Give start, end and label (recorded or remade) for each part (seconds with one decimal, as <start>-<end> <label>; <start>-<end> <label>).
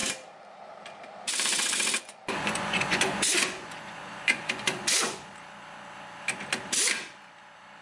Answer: 0.0-1.5 recorded; 1.5-5.3 remade; 5.3-7.8 recorded